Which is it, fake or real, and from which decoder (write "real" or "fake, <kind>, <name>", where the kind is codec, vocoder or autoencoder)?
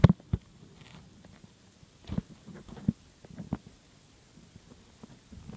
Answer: real